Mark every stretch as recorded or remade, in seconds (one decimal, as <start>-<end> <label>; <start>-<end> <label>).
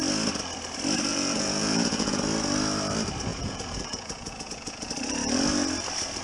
0.0-1.1 recorded; 1.1-2.2 remade; 2.2-3.3 recorded; 3.3-4.9 remade; 4.9-6.2 recorded